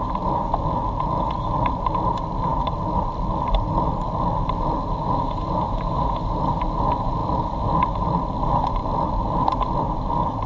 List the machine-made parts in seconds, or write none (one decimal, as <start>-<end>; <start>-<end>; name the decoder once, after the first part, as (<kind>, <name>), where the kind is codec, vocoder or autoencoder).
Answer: 7.2-8.0 (vocoder, BigVGAN v2); 8.8-9.8